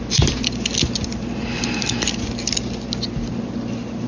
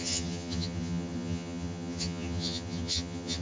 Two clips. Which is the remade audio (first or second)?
second